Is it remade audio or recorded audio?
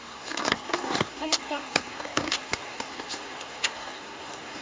remade